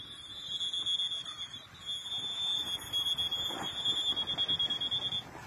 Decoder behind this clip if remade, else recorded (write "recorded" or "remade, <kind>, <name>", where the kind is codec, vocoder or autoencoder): recorded